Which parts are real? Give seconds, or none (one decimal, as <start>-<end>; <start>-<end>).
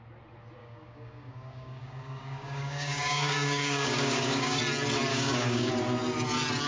0.0-0.6; 4.6-5.1; 5.7-6.7